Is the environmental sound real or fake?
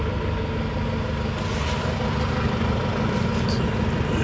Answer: real